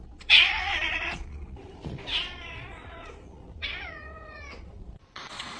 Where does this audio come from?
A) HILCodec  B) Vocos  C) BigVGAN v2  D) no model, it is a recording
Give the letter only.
B